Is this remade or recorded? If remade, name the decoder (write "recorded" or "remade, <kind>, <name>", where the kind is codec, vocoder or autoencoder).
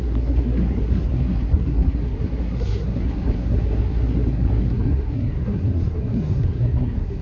remade, codec, SNAC